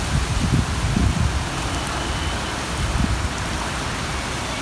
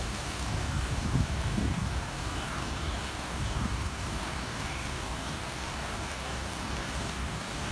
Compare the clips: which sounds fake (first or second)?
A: second